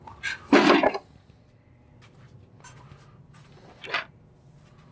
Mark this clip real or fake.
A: real